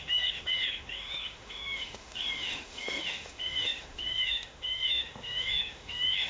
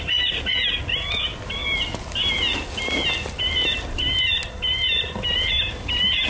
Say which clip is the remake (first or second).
first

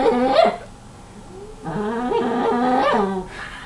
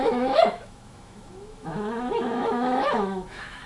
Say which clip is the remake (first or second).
second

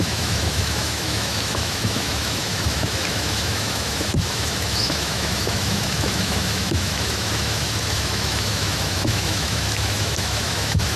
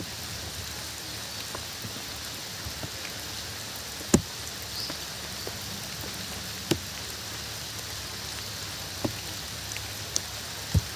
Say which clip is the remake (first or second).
first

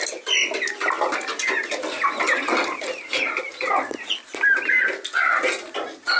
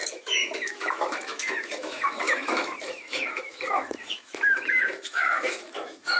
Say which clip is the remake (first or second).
second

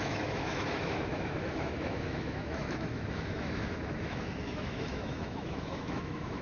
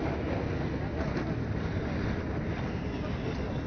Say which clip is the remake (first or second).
first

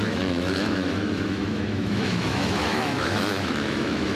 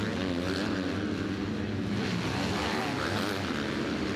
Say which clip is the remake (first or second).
first